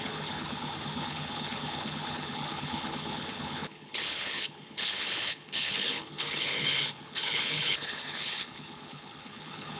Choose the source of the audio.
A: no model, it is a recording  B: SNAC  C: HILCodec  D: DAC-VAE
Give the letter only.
C